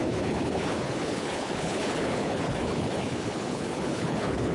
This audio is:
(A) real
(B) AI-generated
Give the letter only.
B